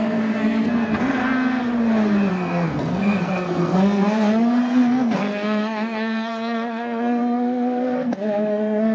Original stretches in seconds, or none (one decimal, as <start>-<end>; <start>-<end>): 1.2-2.3